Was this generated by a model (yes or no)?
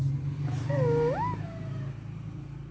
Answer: no